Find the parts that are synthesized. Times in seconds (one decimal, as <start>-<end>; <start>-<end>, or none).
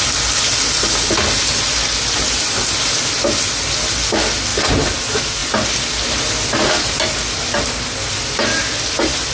none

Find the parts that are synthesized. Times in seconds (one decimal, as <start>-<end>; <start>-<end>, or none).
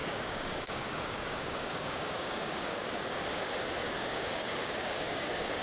0.0-3.4; 3.8-5.6